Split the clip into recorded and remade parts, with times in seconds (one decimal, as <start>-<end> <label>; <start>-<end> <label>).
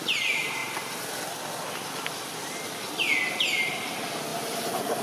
0.0-5.0 recorded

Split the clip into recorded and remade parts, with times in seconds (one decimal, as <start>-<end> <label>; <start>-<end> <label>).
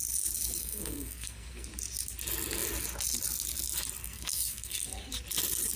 0.0-0.6 recorded; 0.6-1.7 remade; 1.7-4.0 recorded; 4.0-5.1 remade; 5.1-5.8 recorded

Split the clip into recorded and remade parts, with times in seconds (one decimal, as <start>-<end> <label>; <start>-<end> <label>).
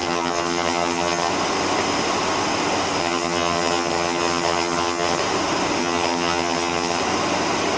0.0-1.3 remade; 1.3-3.0 recorded; 3.0-5.2 remade; 5.2-5.8 recorded; 5.8-7.0 remade; 7.0-7.8 recorded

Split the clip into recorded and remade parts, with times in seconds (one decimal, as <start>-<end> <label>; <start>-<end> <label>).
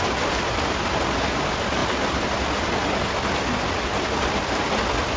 0.0-5.2 recorded